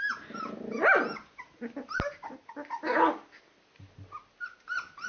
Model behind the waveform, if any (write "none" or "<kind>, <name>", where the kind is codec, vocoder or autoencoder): none